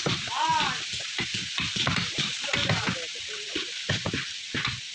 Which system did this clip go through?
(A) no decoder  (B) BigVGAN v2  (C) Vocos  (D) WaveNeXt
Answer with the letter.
A